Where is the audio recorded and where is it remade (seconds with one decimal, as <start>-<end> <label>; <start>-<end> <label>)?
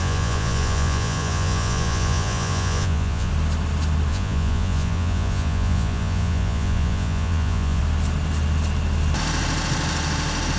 0.0-3.3 remade; 3.3-4.1 recorded; 4.1-7.8 remade; 7.8-10.6 recorded